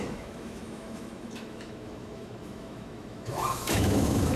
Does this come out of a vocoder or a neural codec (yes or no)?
yes